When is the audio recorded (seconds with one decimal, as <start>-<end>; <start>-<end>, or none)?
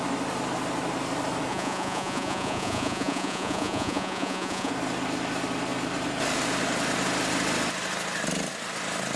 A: 0.0-1.5; 4.7-9.2